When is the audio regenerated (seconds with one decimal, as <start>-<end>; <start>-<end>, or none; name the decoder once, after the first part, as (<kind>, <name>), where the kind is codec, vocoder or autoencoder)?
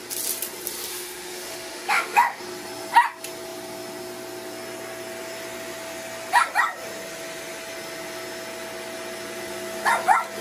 0.9-2.4 (autoencoder, DAC-VAE)